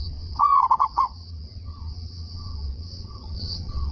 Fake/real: fake